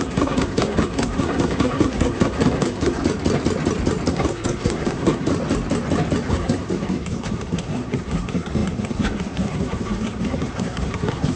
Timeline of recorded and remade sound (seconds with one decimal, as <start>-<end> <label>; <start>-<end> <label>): 0.0-3.0 remade; 3.0-4.1 recorded; 4.1-5.3 remade; 5.3-6.3 recorded; 6.3-11.4 remade